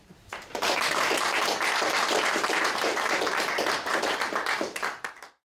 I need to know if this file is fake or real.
fake